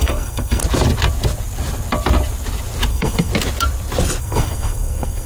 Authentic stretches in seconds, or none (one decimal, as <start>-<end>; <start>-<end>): 0.6-2.9; 3.3-4.2